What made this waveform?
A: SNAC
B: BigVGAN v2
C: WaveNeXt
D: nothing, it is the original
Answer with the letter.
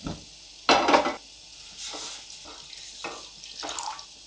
D